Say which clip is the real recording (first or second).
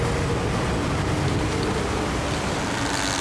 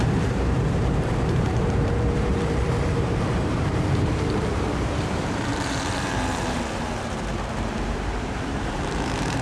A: first